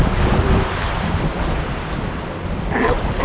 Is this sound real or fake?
fake